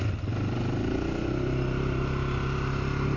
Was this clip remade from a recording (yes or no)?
no